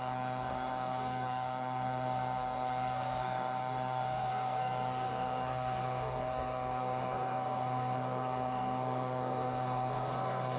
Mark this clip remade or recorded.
remade